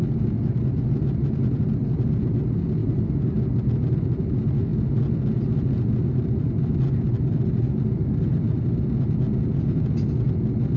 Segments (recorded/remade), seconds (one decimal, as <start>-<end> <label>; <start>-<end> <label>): 0.0-2.8 recorded; 2.8-3.6 remade; 3.6-10.8 recorded

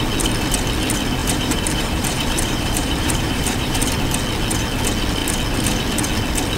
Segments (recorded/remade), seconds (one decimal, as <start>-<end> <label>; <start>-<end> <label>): 0.0-1.2 recorded; 1.2-3.9 remade; 3.9-6.6 recorded

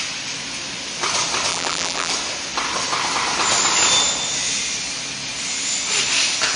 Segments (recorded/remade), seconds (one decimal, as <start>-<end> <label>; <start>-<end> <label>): 0.0-1.5 recorded; 1.5-2.1 remade; 2.1-6.6 recorded

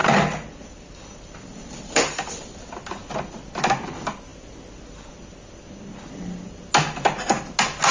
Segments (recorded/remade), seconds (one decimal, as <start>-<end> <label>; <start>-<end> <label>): 0.0-2.7 remade; 2.7-7.9 recorded

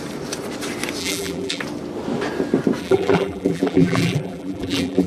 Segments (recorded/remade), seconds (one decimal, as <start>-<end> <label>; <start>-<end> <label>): 0.0-1.0 recorded; 1.0-1.6 remade; 1.6-2.8 recorded; 2.8-5.1 remade

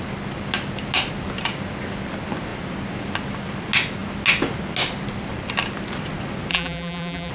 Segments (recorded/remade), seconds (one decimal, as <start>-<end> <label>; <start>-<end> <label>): 0.0-6.5 recorded; 6.5-7.3 remade